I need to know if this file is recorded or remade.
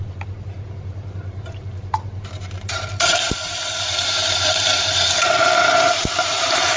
remade